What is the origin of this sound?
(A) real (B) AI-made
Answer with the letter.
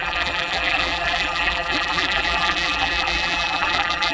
B